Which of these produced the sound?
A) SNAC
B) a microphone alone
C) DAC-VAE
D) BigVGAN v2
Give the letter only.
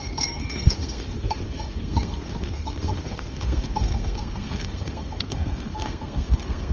A